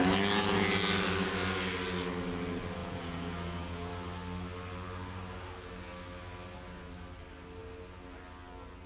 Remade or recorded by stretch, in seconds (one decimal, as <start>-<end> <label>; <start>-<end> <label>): 0.0-2.8 recorded; 2.8-3.9 remade; 3.9-8.9 recorded